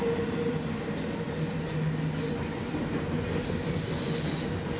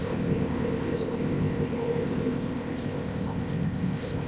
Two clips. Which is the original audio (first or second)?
first